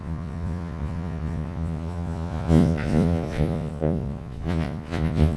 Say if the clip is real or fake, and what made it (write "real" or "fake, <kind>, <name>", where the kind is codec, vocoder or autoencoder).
fake, vocoder, Vocos